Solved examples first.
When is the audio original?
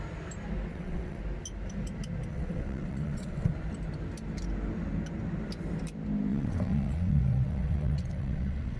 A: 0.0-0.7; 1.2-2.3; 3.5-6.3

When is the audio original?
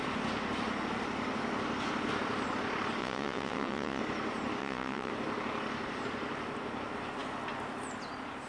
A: 0.0-3.0; 4.0-4.6; 5.1-8.5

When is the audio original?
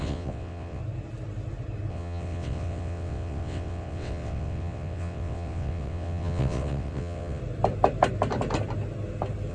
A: 0.8-1.9; 7.4-9.5